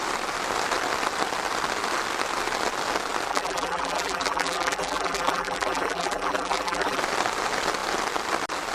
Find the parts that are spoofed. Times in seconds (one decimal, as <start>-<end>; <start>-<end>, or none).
3.3-7.0